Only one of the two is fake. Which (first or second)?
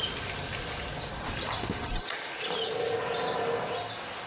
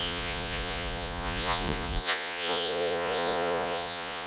second